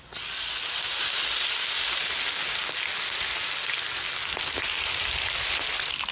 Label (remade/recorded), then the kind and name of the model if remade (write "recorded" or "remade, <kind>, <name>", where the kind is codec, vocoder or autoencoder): recorded